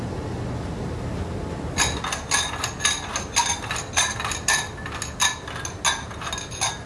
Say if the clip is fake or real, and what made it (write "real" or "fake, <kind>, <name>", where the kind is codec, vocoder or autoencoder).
real